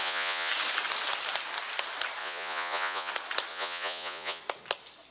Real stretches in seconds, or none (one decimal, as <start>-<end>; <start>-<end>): 0.5-2.2; 3.1-3.5; 4.4-5.1